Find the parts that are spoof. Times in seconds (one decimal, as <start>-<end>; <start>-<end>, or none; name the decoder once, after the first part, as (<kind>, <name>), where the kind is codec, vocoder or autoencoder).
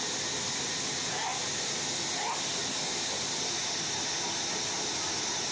none